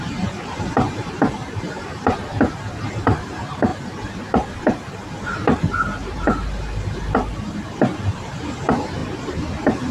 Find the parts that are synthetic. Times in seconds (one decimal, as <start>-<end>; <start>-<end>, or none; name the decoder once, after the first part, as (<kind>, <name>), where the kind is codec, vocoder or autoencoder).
0.0-9.9 (vocoder, BigVGAN v2)

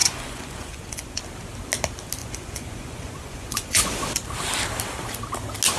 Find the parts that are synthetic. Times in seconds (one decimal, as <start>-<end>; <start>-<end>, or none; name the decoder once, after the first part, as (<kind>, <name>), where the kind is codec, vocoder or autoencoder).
0.0-1.2 (vocoder, Vocos); 2.2-4.0

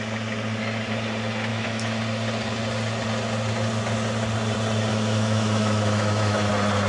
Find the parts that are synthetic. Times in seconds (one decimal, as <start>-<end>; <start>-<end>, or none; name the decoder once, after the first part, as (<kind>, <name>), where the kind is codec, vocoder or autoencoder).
1.5-2.0 (autoencoder, DAC-VAE); 4.9-6.5

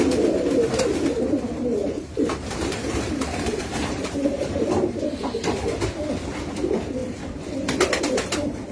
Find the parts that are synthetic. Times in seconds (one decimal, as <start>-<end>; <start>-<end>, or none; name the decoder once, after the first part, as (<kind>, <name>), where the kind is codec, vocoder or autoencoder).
1.8-5.1 (vocoder, BigVGAN v2)